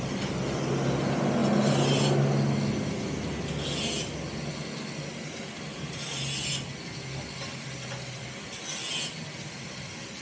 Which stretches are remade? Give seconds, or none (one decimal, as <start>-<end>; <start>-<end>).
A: none